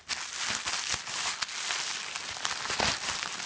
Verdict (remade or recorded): recorded